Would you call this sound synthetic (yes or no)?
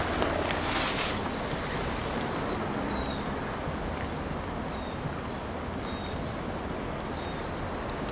no